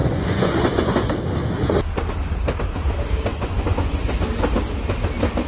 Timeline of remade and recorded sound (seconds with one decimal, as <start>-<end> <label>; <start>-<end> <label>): 0.0-1.1 remade; 1.1-3.3 recorded; 3.3-4.1 remade; 4.1-5.5 recorded